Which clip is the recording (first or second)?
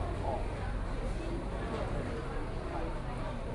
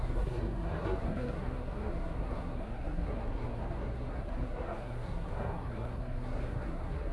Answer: first